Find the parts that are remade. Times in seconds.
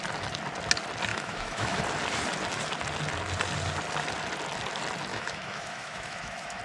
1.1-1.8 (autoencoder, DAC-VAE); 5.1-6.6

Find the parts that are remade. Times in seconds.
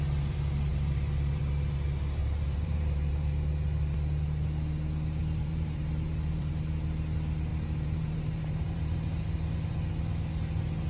0.7-1.4 (vocoder, BigVGAN v2); 2.2-3.5; 5.2-6.5; 7.5-9.2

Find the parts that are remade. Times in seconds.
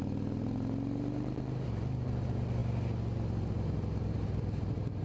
none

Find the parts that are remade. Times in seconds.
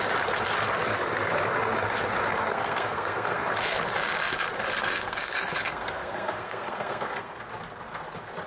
2.5-3.4 (codec, SNAC); 4.7-7.4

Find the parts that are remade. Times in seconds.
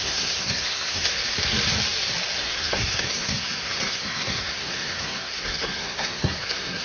0.0-1.2 (codec, SNAC); 2.4-6.8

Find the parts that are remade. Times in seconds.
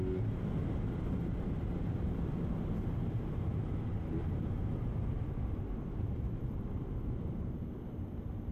0.6-2.2 (vocoder, BigVGAN v2); 3.5-7.5